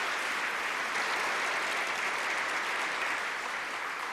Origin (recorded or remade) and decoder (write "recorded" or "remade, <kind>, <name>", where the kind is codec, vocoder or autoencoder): recorded